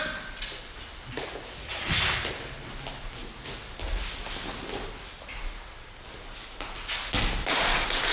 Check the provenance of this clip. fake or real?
real